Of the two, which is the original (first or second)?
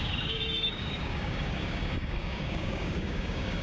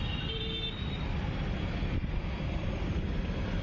second